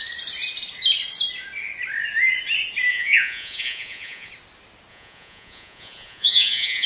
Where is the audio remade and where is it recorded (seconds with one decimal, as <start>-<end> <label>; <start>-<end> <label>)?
0.0-2.9 recorded; 2.9-4.3 remade; 4.3-4.9 recorded; 4.9-6.9 remade